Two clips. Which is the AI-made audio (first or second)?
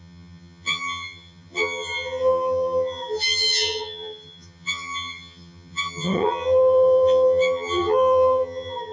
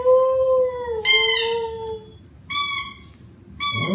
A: first